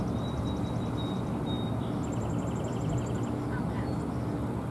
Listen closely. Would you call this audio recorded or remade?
recorded